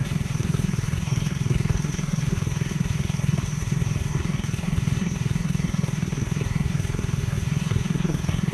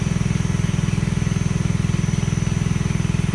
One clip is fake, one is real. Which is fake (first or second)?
first